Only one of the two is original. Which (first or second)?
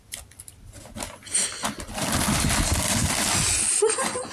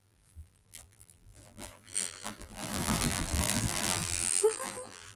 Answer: first